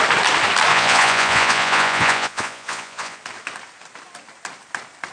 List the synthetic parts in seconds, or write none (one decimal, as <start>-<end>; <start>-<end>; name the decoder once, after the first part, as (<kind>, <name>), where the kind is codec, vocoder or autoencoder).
0.7-3.2 (vocoder, Vocos)

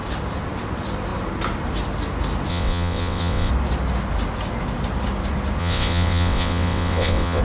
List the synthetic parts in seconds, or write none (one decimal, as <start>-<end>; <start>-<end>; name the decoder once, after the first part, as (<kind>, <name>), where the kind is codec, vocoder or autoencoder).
2.5-3.5 (vocoder, WaveNeXt); 5.6-7.4

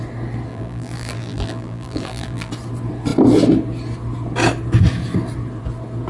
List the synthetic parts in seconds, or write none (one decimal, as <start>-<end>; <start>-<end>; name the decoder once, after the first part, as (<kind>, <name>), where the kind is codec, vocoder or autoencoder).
0.5-2.5 (vocoder, BigVGAN v2)

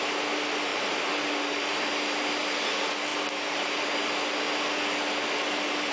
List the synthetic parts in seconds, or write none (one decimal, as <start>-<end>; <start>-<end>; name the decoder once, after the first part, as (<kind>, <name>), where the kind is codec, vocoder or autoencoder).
0.7-1.8 (vocoder, BigVGAN v2)